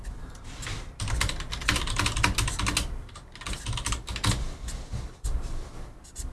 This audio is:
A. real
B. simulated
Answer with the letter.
A